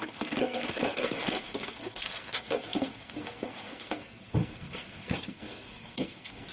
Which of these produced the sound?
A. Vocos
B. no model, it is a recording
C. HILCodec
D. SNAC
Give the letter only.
D